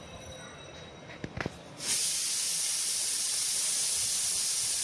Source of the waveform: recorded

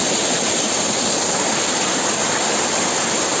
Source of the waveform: recorded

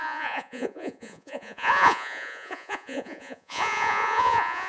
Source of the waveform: remade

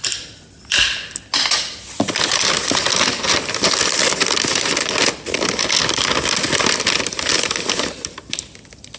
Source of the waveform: recorded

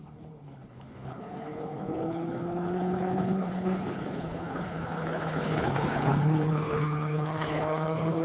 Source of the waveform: remade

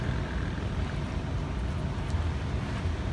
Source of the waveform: recorded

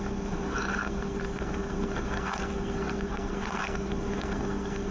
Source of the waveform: remade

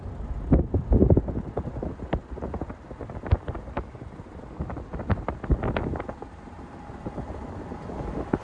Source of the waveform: recorded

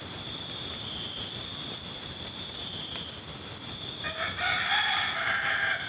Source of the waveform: recorded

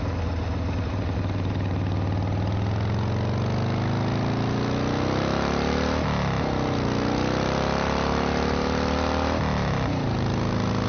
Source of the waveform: recorded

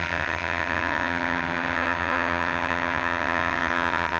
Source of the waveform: remade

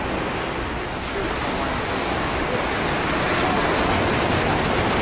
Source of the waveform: recorded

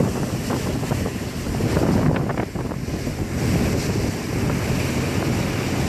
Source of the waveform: recorded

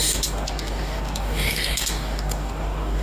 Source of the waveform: remade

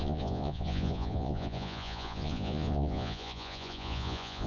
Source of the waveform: remade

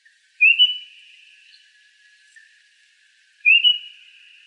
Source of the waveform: remade